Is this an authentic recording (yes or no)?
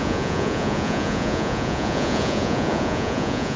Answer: no